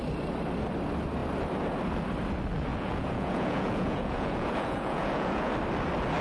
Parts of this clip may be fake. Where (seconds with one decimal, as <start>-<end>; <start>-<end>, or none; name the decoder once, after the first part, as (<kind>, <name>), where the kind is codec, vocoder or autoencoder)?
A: 2.7-5.5 (vocoder, Vocos)